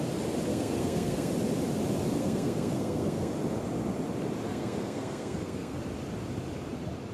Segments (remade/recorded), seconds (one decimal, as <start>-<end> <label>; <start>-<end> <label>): 0.0-0.5 recorded; 0.5-1.3 remade; 1.3-2.2 recorded; 2.2-3.3 remade; 3.3-4.5 recorded; 4.5-5.8 remade; 5.8-7.1 recorded